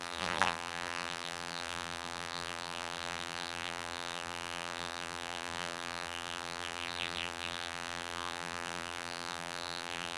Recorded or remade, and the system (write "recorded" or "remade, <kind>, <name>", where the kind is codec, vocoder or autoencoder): remade, vocoder, BigVGAN v2